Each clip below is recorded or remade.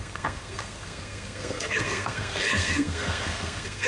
remade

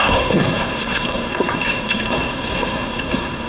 remade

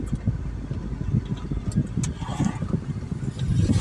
recorded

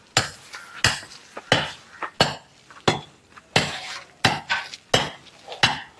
recorded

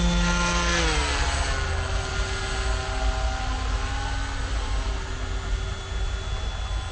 recorded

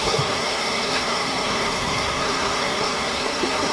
remade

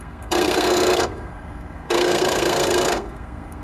remade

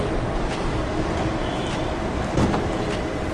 remade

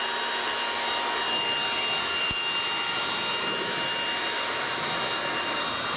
recorded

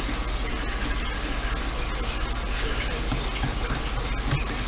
recorded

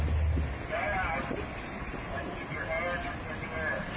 recorded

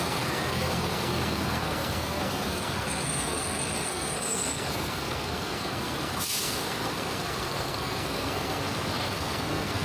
remade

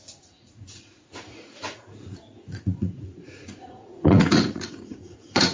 remade